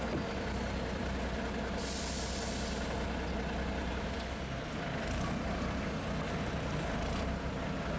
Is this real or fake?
real